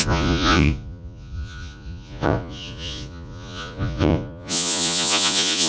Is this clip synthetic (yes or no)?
yes